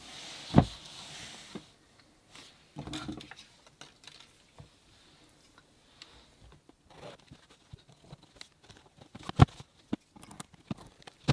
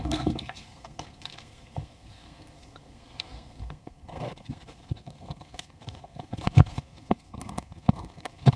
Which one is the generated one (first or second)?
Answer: second